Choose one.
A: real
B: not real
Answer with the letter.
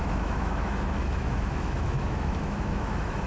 B